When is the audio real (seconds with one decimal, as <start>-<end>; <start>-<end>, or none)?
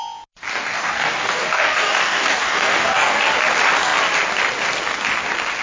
0.0-0.5; 3.3-5.6